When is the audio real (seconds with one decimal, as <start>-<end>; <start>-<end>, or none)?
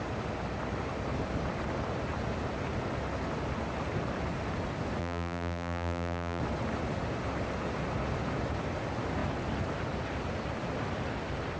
0.0-5.0; 6.4-11.6